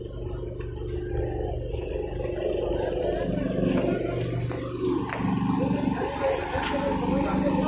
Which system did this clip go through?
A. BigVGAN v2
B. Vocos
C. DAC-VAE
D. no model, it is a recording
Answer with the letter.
D